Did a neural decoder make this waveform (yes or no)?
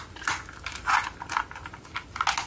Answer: no